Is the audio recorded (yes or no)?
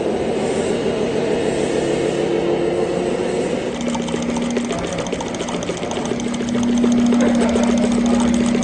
yes